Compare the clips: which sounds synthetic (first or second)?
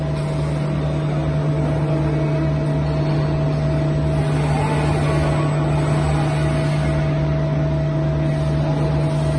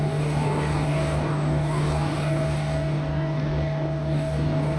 second